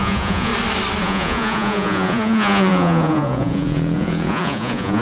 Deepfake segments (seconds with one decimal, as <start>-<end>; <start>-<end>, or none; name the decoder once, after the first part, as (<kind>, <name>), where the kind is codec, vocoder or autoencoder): 0.0-0.5 (vocoder, Vocos); 1.0-5.0